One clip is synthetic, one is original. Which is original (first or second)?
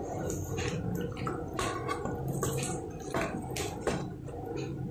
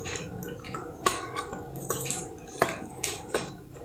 first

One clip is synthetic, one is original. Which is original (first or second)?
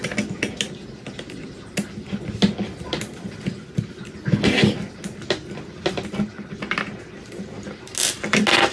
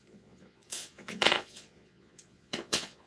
first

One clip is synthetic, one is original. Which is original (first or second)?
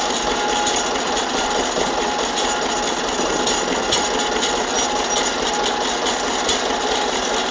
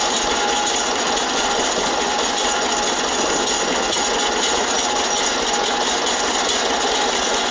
first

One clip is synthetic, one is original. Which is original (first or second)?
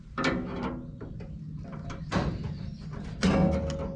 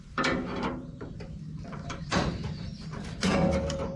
first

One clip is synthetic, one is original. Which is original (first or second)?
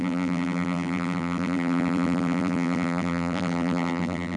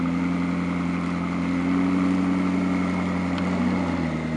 second